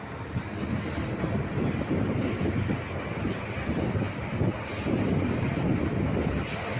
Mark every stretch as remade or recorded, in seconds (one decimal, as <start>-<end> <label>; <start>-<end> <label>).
0.0-6.8 recorded